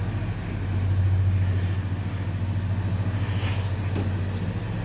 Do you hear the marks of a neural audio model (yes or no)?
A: no